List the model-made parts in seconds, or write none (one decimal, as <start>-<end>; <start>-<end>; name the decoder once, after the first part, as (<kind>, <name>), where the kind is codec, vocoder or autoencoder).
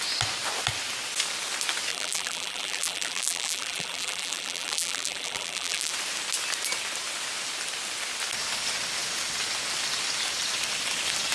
1.9-5.9 (vocoder, BigVGAN v2)